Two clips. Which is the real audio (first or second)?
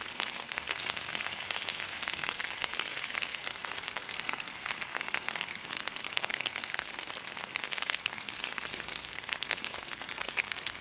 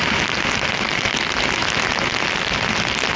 second